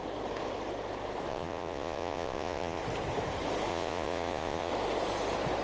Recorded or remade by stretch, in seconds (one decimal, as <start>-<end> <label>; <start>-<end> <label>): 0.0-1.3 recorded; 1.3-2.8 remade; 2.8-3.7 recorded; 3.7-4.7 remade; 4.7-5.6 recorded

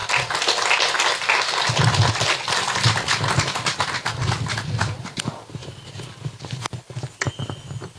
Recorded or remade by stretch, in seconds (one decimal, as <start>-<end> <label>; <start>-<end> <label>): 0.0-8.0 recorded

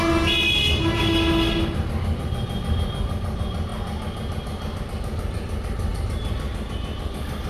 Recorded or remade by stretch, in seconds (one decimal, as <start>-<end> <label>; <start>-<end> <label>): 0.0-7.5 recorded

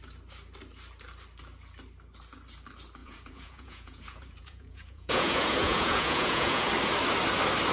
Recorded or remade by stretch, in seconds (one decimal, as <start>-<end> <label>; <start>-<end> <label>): 0.0-3.0 recorded; 3.0-6.7 remade; 6.7-7.7 recorded

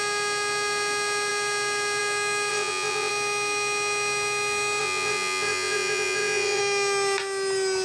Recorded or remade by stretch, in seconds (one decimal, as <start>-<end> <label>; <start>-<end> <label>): 0.0-2.5 recorded; 2.5-3.1 remade; 3.1-4.8 recorded; 4.8-6.6 remade; 6.6-7.8 recorded

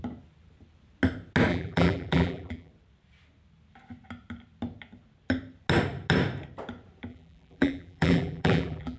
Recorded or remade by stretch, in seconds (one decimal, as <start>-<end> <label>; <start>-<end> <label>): 0.0-1.5 recorded; 1.5-2.7 remade; 2.7-7.1 recorded; 7.1-9.0 remade